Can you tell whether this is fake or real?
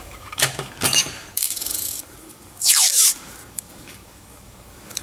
fake